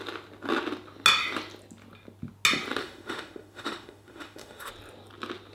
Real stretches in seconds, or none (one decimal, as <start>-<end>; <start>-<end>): 0.0-2.8; 4.7-5.5